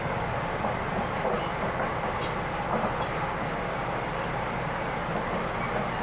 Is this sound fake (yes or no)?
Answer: no